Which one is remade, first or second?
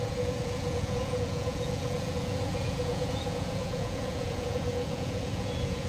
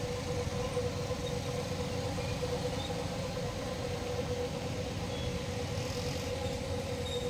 first